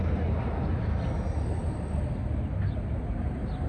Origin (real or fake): real